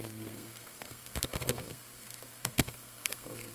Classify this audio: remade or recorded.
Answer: remade